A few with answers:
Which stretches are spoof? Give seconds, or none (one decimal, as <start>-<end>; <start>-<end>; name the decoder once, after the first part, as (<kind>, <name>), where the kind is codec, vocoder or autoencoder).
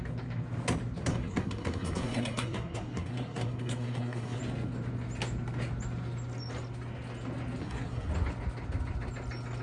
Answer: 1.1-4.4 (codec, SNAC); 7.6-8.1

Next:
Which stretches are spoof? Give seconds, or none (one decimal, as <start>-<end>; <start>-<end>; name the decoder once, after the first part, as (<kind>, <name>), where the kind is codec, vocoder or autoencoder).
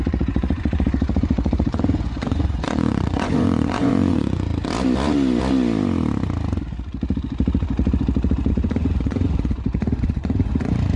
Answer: 0.0-4.5 (vocoder, Vocos); 8.5-11.0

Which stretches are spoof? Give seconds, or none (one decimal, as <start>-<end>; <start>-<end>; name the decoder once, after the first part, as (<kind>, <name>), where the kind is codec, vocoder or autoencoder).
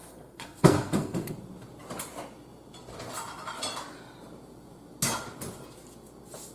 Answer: 0.0-1.3 (codec, SNAC)